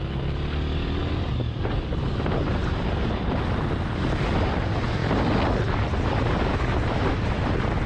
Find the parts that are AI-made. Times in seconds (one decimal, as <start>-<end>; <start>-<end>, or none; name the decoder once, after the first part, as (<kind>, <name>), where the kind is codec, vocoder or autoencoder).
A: none